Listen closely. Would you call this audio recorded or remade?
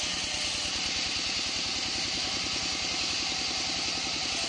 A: recorded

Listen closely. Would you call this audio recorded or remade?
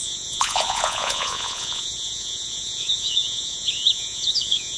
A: remade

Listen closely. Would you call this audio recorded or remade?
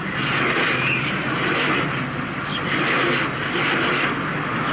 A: recorded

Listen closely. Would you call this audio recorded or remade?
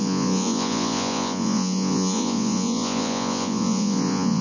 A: remade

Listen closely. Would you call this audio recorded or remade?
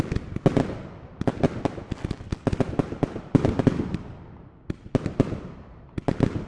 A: recorded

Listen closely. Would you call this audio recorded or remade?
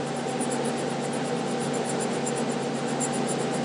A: recorded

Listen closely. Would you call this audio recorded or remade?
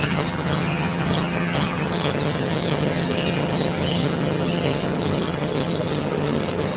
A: remade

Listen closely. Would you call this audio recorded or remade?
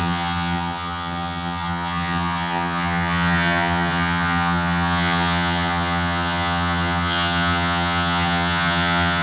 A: remade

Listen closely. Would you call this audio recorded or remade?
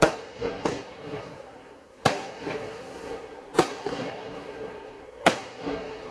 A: remade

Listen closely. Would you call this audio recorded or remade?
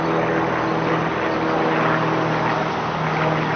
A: recorded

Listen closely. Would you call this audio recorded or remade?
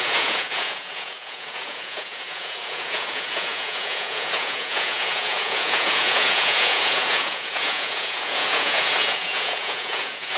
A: remade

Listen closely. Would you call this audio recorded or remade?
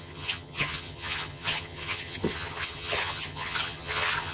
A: remade